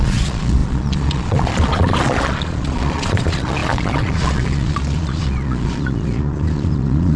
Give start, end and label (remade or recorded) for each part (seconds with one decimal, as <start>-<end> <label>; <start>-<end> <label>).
0.0-7.2 remade